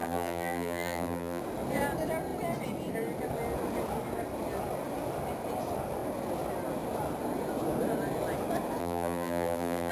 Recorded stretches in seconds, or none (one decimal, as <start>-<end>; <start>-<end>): 1.4-8.8

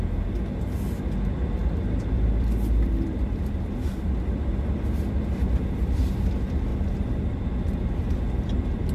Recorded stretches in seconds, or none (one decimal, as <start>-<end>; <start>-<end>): 0.0-1.6; 4.5-6.7; 7.5-8.9

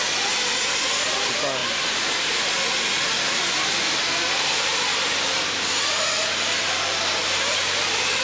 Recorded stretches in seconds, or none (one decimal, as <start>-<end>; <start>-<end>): 0.0-2.9; 6.6-7.2

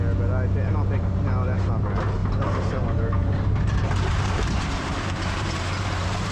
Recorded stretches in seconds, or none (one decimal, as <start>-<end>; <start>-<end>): 0.0-0.7; 1.7-2.2

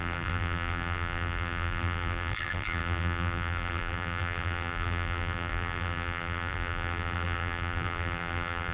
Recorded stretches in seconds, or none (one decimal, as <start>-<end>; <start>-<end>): none

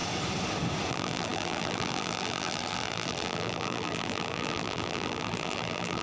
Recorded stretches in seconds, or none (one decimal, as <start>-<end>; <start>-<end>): 0.0-0.9